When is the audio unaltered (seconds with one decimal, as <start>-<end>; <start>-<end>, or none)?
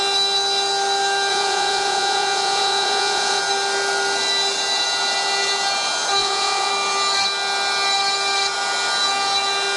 0.0-1.3; 3.4-6.2; 6.7-9.8